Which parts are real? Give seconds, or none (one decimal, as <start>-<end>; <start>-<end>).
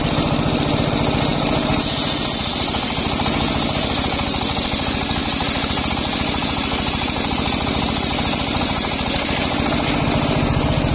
0.0-10.9